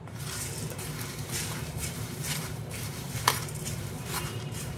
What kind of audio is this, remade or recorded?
remade